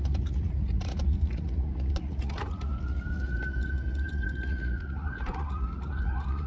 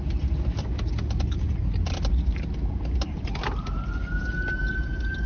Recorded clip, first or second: second